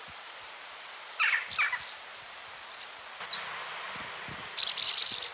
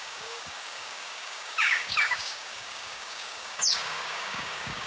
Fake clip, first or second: second